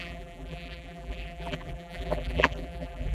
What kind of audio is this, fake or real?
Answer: fake